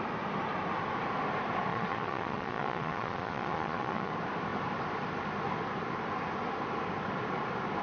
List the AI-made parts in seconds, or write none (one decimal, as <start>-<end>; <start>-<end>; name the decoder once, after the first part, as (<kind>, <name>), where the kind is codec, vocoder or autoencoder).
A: 1.7-4.1 (vocoder, Vocos)